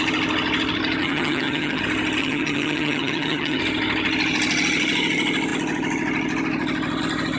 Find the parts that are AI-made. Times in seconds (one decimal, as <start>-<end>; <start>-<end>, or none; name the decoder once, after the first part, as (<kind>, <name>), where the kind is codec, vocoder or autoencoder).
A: 1.0-1.8 (vocoder, HiFi-GAN); 2.2-3.6